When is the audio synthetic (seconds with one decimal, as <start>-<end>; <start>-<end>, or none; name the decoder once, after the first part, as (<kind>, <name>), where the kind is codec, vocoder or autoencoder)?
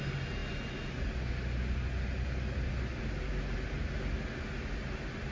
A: none